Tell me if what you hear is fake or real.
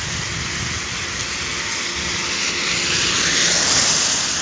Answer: real